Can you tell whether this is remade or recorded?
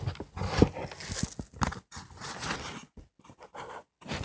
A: recorded